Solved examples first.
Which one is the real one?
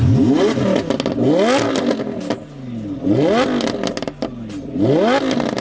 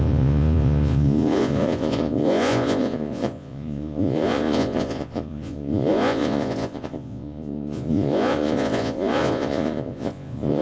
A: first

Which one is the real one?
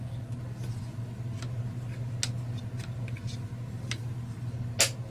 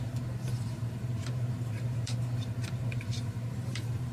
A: first